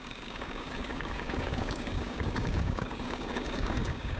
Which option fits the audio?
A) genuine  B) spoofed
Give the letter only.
B